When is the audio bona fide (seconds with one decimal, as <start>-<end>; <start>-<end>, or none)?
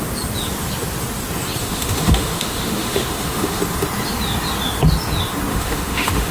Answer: 0.0-1.6; 3.6-5.5